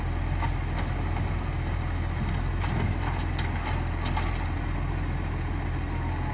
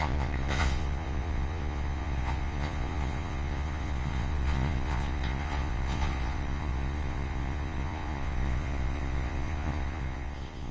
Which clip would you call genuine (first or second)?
first